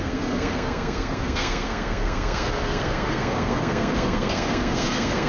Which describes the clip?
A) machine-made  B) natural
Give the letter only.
A